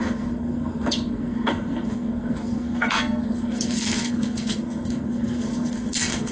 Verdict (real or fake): fake